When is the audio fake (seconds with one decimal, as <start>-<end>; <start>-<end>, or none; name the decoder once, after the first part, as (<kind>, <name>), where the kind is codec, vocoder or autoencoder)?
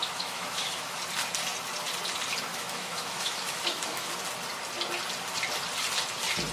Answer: 0.0-1.0 (autoencoder, DAC-VAE); 2.5-4.1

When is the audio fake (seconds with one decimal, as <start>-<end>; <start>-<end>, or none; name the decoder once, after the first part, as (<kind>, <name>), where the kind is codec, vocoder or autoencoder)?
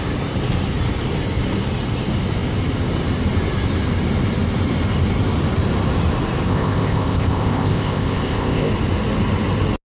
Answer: 6.5-8.7 (codec, ZipCodec)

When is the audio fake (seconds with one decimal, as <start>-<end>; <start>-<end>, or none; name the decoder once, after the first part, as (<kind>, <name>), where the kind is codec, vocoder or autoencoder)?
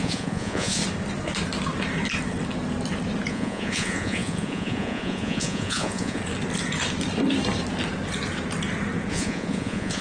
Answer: 0.0-0.8 (vocoder, Vocos); 3.3-6.2; 9.1-10.0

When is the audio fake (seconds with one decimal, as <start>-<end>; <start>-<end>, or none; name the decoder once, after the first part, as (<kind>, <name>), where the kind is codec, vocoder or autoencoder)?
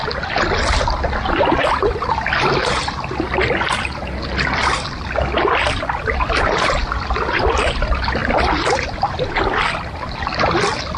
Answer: none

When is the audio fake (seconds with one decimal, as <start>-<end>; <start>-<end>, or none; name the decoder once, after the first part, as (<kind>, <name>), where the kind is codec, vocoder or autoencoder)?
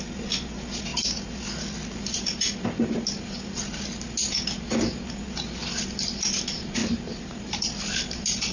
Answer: 6.8-7.9 (vocoder, BigVGAN v2)